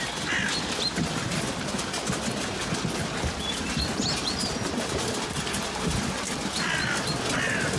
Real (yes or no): yes